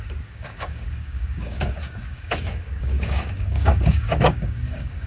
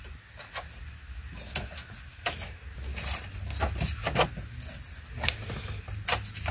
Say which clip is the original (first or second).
second